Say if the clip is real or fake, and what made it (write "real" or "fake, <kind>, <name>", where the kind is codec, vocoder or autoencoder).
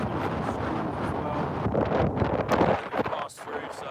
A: real